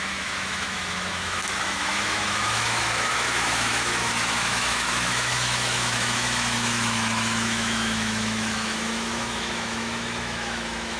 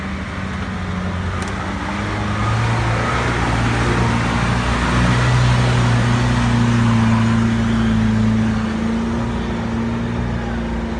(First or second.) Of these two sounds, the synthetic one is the first